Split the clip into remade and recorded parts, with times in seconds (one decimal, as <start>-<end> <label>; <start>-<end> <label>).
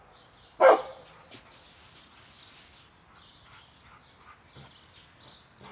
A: 0.0-5.7 recorded